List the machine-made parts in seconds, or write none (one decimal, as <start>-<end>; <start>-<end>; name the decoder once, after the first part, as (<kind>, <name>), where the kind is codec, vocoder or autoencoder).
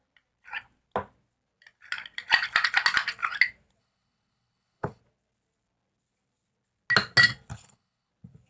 3.8-5.0 (codec, HILCodec); 7.5-8.1